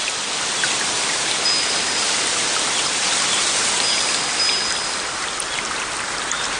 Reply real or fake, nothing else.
real